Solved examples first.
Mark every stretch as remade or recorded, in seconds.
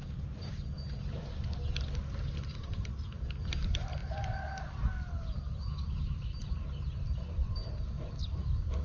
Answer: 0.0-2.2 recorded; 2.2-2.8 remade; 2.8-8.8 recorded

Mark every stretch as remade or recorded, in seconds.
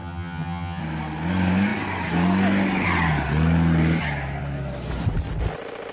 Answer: 0.0-0.8 remade; 0.8-5.9 recorded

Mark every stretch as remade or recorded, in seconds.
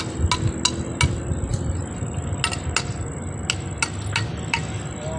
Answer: 0.0-5.2 recorded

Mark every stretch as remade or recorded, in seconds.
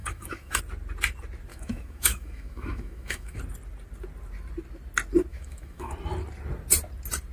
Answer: 0.0-0.6 remade; 0.6-1.5 recorded; 1.5-3.4 remade; 3.4-5.3 recorded; 5.3-5.9 remade; 5.9-7.3 recorded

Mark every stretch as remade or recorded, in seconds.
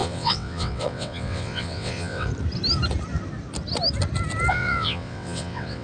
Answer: 0.0-2.3 remade; 2.3-4.5 recorded; 4.5-5.8 remade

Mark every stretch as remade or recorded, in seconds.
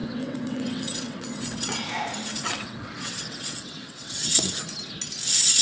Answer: 0.0-1.7 remade; 1.7-2.3 recorded; 2.3-4.4 remade; 4.4-5.6 recorded